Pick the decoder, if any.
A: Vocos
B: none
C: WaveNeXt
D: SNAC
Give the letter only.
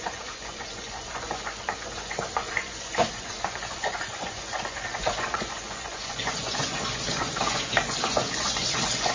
A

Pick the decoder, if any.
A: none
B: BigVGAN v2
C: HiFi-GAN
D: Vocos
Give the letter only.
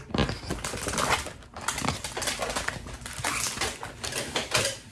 A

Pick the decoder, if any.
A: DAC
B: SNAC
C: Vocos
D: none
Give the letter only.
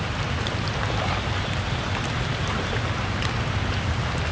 D